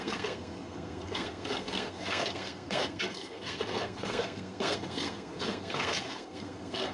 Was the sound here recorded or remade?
remade